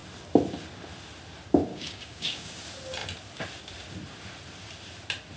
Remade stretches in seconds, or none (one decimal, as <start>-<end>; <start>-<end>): 1.7-2.6